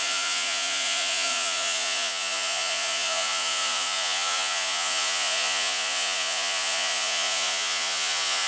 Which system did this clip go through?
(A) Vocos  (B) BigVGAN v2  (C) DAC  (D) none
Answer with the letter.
A